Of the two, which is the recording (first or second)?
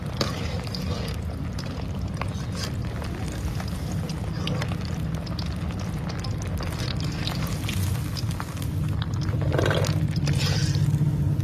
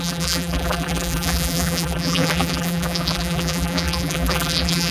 first